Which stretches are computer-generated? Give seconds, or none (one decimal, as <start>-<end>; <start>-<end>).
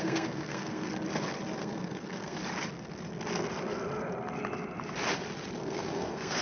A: 0.0-0.9; 1.6-2.4; 5.6-6.4